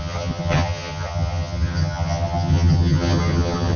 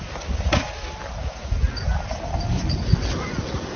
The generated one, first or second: first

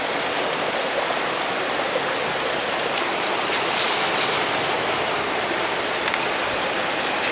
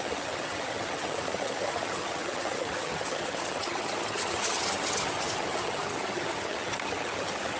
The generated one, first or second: second